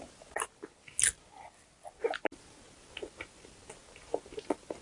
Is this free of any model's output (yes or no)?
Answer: yes